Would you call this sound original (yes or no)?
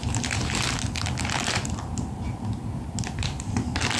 yes